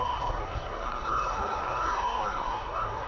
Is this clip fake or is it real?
fake